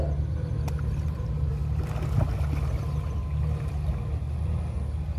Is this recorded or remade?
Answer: recorded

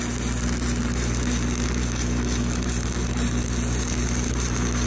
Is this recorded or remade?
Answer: recorded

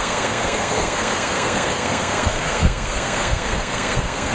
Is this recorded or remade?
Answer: remade